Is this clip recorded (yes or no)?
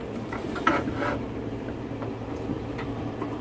yes